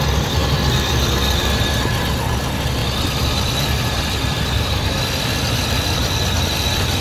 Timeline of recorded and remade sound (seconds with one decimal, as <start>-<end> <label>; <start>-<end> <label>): 0.0-7.0 recorded